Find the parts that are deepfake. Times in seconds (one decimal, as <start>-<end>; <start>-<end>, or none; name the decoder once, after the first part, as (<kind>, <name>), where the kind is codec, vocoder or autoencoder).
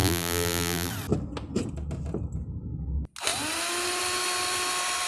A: 0.0-0.9 (vocoder, BigVGAN v2)